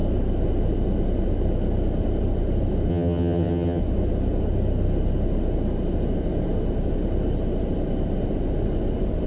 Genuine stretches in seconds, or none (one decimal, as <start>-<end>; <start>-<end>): 0.0-2.9; 3.8-9.3